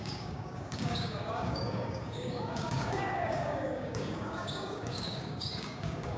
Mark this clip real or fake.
fake